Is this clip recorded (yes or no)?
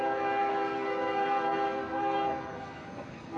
no